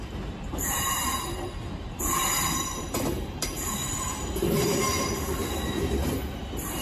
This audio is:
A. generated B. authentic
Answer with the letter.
A